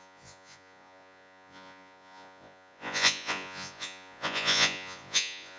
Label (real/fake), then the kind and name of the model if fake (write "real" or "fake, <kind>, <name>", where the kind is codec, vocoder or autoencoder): fake, vocoder, Vocos